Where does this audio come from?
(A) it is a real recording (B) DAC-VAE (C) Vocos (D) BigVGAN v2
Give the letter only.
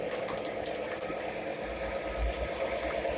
A